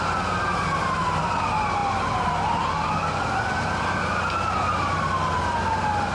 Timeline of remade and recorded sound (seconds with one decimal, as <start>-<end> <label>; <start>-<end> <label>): 0.0-6.1 recorded